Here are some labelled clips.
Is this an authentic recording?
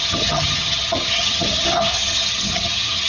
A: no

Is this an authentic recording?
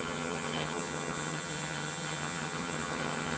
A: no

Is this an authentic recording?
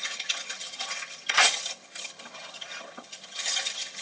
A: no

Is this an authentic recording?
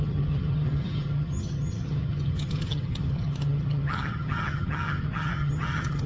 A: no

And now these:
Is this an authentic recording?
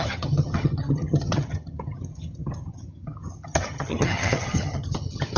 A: no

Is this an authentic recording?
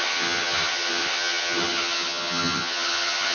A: no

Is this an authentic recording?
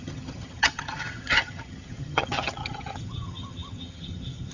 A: no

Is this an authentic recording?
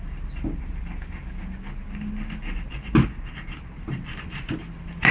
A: yes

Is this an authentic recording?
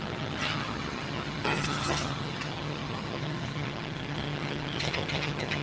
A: no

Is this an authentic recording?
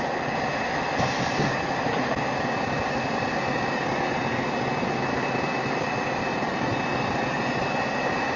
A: yes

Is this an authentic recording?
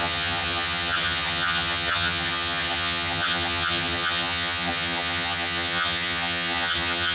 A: no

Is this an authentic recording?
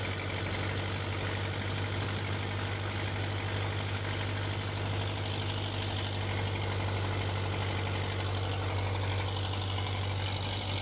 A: yes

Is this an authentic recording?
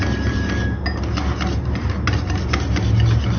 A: yes